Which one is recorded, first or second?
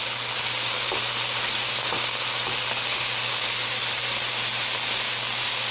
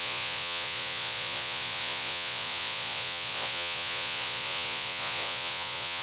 first